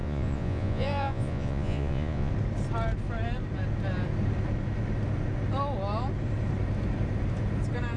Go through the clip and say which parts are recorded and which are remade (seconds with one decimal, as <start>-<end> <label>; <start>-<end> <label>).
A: 0.0-2.3 remade; 2.3-8.0 recorded